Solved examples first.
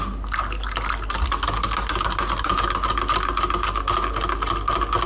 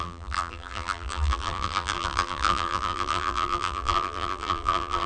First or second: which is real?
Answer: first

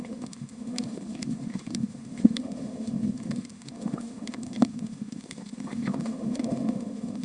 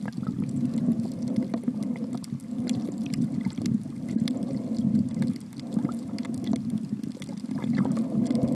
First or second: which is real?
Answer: second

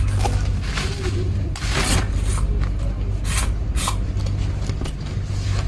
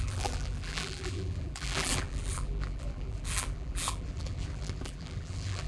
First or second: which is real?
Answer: first